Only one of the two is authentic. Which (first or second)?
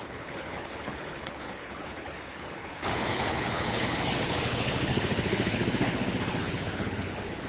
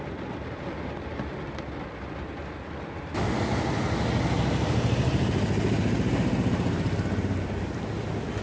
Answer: second